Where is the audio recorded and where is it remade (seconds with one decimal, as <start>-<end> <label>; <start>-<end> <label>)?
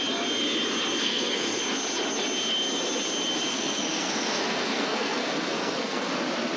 0.0-1.0 recorded; 1.0-1.6 remade; 1.6-3.5 recorded; 3.5-6.1 remade; 6.1-6.6 recorded